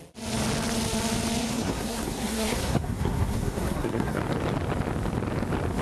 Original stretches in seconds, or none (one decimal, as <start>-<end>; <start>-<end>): 0.0-1.4; 4.2-5.8